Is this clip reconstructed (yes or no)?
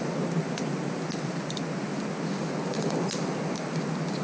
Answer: no